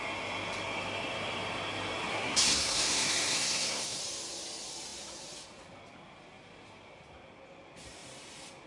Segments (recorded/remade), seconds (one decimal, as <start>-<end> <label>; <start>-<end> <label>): 0.0-2.1 recorded; 2.1-4.0 remade; 4.0-8.7 recorded